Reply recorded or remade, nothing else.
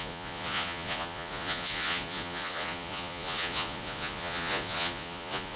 remade